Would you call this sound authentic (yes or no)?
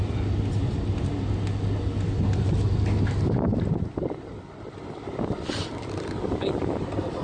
yes